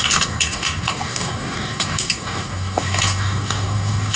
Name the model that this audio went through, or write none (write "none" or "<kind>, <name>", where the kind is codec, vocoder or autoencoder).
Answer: codec, DAC